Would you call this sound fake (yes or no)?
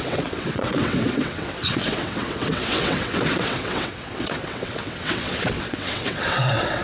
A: yes